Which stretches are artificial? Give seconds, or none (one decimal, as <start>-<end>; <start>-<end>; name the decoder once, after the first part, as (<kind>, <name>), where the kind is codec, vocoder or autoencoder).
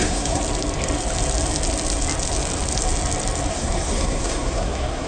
0.0-0.4 (codec, SNAC); 3.5-5.1